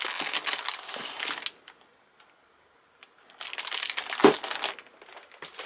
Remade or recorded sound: recorded